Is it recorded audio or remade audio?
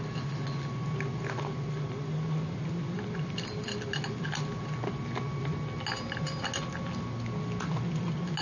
recorded